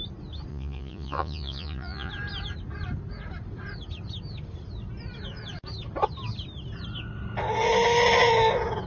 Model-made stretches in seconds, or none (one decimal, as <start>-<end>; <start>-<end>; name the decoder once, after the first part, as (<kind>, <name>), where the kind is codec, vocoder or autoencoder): 0.5-2.1 (vocoder, Vocos)